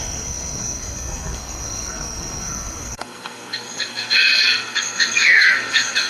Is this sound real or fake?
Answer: fake